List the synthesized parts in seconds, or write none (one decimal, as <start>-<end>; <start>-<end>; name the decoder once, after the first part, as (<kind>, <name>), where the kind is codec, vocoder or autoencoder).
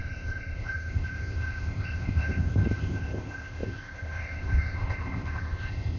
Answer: 0.0-6.0 (codec, ZipCodec)